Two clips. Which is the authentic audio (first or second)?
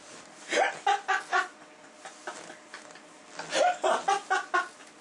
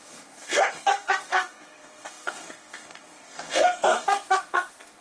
first